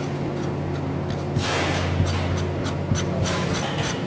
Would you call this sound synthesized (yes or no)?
no